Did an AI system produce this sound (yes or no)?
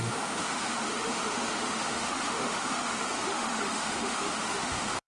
yes